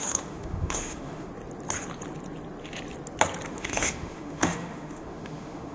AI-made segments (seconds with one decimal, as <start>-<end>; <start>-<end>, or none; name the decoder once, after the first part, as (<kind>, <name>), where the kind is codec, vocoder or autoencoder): 0.0-1.3 (autoencoder, DAC-VAE); 3.5-5.7